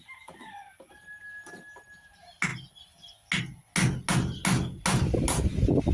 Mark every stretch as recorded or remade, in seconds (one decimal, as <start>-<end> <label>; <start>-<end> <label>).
0.0-5.9 recorded